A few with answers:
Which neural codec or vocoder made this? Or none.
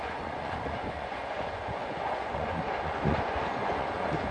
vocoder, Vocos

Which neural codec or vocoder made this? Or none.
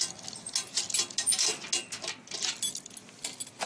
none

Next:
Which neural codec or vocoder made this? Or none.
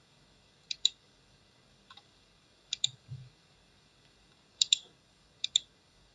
codec, DAC